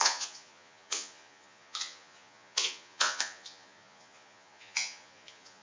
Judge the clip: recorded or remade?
remade